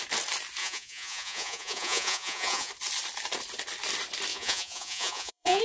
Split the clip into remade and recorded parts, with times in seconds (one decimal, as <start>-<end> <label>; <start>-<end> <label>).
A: 0.0-0.6 recorded; 0.6-2.7 remade; 2.7-4.3 recorded; 4.3-5.6 remade